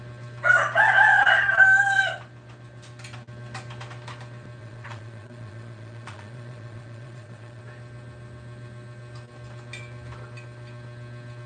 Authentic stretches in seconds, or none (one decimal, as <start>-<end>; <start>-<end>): 0.0-4.6; 7.6-11.5